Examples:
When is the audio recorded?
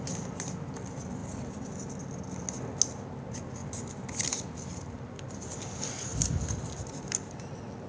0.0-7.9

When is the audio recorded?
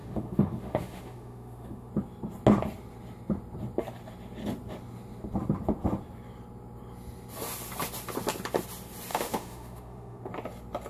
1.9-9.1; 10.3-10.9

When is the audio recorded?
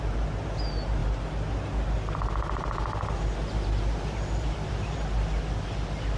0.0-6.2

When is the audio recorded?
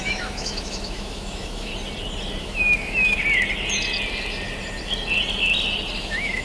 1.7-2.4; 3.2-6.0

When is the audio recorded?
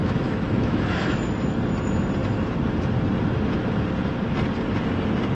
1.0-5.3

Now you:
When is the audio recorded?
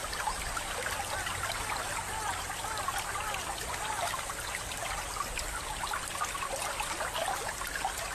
3.3-8.1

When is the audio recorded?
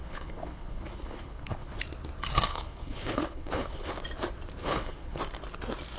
1.8-2.5; 3.9-4.6; 5.2-6.0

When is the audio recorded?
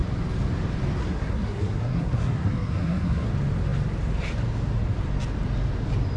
0.0-1.0; 3.3-6.2